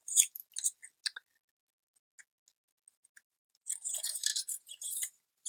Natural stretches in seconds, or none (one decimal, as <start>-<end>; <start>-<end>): 0.4-2.9